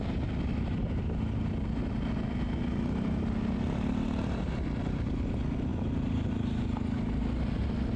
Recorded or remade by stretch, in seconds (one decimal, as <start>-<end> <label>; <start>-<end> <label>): 0.0-8.0 recorded